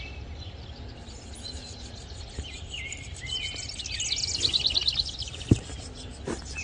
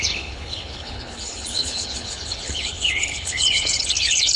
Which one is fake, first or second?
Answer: second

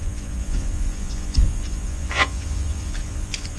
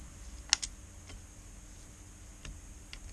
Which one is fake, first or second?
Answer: first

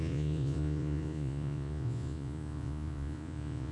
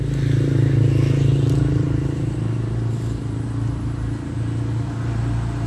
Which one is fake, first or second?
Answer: first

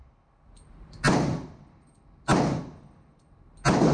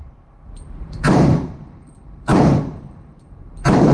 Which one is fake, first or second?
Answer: second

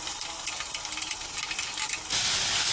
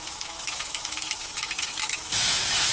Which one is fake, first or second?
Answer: second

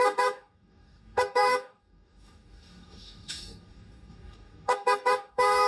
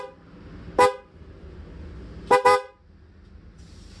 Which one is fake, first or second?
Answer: first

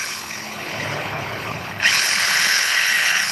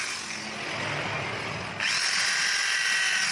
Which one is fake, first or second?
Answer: first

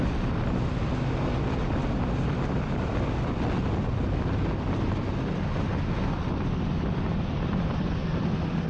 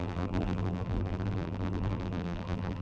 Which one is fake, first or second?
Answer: second